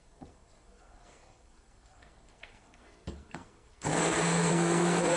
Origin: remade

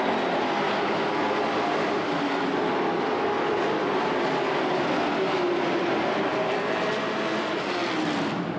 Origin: recorded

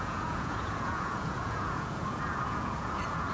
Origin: remade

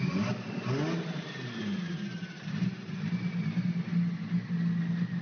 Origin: recorded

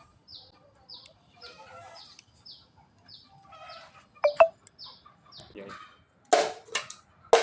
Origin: recorded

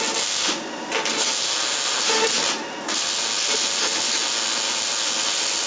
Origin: recorded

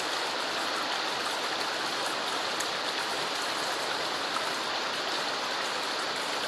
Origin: recorded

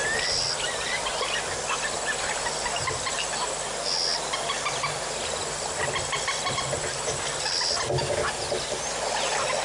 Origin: recorded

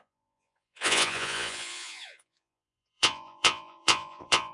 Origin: remade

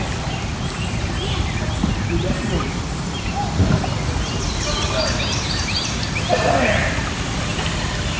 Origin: recorded